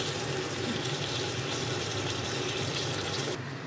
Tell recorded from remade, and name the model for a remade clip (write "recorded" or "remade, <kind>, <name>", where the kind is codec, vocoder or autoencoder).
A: remade, vocoder, BigVGAN v2